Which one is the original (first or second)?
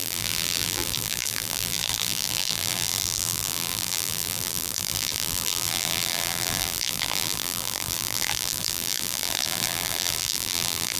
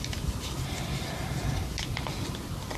second